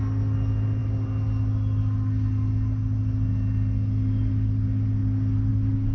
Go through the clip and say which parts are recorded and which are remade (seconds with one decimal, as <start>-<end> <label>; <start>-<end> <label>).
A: 0.0-5.9 recorded